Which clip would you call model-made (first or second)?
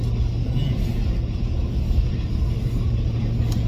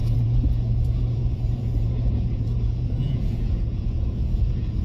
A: second